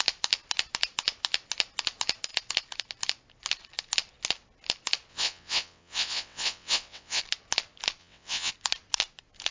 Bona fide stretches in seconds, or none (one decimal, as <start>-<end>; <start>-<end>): 0.0-5.1; 7.2-8.0; 8.5-9.5